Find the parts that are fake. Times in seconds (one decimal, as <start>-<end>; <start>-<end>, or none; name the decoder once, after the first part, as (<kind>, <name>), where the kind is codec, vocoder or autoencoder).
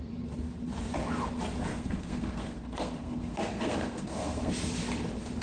1.7-4.5 (codec, SNAC)